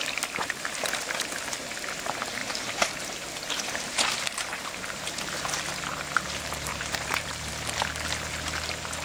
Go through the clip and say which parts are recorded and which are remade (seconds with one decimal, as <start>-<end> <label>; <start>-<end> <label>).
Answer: 0.0-2.4 recorded; 2.4-5.8 remade; 5.8-6.7 recorded; 6.7-7.5 remade; 7.5-9.0 recorded